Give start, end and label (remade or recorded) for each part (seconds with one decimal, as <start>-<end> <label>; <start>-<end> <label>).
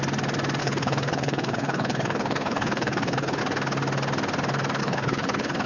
0.0-0.6 recorded; 0.6-3.4 remade; 3.4-4.8 recorded; 4.8-5.7 remade